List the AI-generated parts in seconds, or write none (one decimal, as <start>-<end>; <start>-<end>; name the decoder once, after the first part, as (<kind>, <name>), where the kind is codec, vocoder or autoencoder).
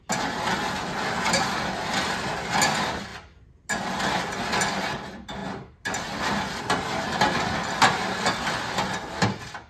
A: none